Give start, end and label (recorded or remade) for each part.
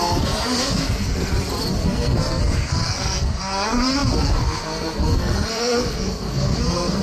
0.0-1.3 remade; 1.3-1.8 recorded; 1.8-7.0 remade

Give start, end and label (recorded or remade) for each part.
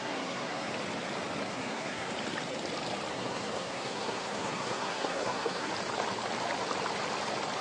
0.0-0.7 remade; 0.7-1.4 recorded; 1.4-2.1 remade; 2.1-3.1 recorded; 3.1-5.7 remade; 5.7-7.6 recorded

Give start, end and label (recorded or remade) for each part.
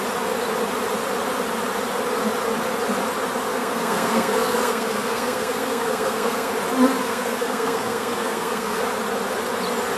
0.0-3.5 recorded; 3.5-6.5 remade; 6.5-7.0 recorded; 7.0-8.8 remade; 8.8-10.0 recorded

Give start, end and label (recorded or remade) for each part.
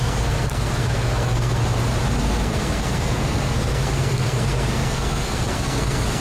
0.0-1.6 remade; 1.6-2.2 recorded; 2.2-6.2 remade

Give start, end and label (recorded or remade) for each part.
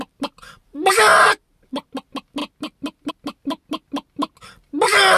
0.0-5.2 recorded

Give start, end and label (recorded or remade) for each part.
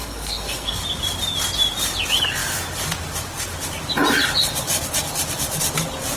0.0-0.8 remade; 0.8-6.2 recorded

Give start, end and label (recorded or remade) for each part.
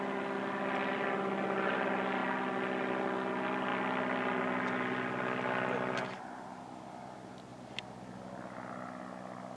0.0-9.6 recorded